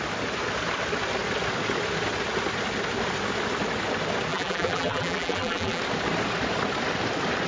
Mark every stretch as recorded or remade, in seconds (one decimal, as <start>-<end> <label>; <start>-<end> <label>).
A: 0.0-4.3 recorded; 4.3-5.8 remade; 5.8-7.5 recorded